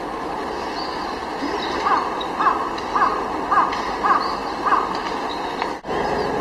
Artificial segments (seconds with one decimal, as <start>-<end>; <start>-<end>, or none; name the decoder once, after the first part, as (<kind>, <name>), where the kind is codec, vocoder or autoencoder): none